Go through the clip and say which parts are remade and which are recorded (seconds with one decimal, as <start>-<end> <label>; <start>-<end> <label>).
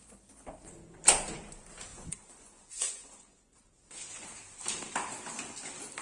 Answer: 0.0-1.9 recorded; 1.9-3.6 remade; 3.6-6.0 recorded